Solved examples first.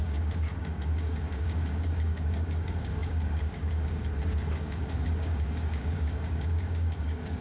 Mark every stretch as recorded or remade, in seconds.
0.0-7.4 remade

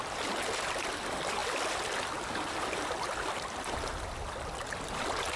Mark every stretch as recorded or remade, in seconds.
0.0-5.4 recorded

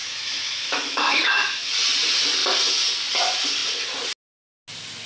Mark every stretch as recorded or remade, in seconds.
0.0-1.7 remade; 1.7-5.1 recorded

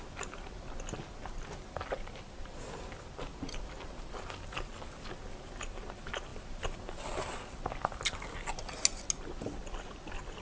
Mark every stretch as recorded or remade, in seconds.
0.0-10.4 recorded

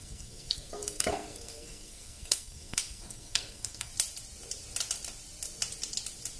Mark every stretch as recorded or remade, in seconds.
0.0-3.9 remade; 3.9-6.4 recorded

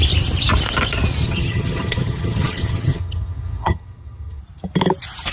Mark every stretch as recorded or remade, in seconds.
0.0-1.2 recorded; 1.2-4.4 remade; 4.4-5.3 recorded

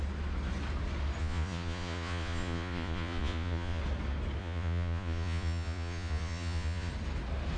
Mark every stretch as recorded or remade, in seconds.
0.0-1.2 recorded; 1.2-3.8 remade; 3.8-4.4 recorded; 4.4-6.9 remade; 6.9-7.6 recorded